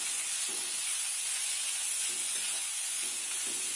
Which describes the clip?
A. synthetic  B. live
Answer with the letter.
A